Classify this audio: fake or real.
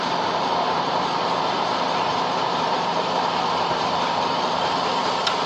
fake